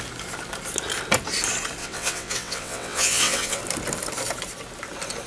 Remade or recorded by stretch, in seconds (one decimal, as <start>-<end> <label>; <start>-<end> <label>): 0.0-1.8 recorded; 1.8-3.6 remade; 3.6-5.3 recorded